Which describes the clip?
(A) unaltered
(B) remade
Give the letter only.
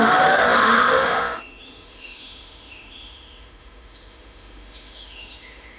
B